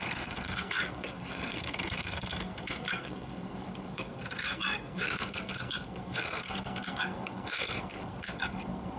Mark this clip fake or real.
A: fake